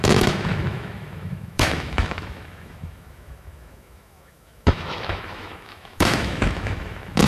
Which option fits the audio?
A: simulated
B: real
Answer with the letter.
A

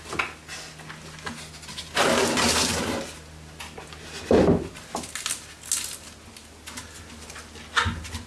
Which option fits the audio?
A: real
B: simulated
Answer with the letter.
A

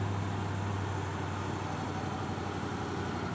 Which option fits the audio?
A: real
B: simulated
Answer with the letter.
A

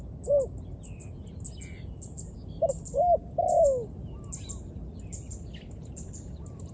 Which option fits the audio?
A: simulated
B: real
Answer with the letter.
B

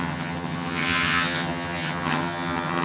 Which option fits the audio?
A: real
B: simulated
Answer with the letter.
B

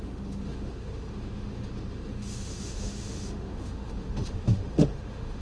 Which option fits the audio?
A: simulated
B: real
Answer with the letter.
A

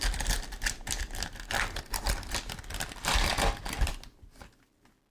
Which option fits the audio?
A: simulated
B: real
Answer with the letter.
B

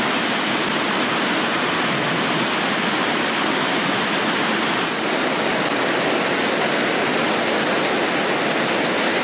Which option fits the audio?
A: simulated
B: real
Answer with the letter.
B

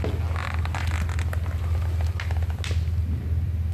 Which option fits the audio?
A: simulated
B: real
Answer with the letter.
B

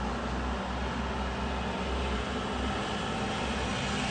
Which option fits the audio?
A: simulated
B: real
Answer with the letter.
B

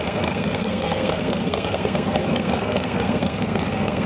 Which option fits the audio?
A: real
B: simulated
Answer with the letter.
B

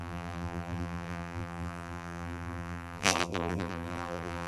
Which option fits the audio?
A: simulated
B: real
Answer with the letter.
A